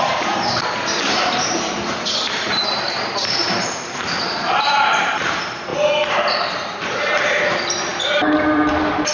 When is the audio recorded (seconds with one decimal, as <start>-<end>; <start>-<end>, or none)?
5.7-7.5